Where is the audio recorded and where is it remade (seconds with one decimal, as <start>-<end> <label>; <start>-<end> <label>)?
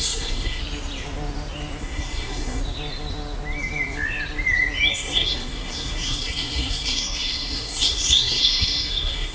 0.0-0.6 remade; 0.6-1.8 recorded; 1.8-2.6 remade; 2.6-4.9 recorded; 4.9-9.3 remade